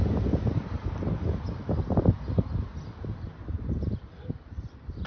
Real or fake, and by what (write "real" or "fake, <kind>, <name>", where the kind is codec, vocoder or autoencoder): real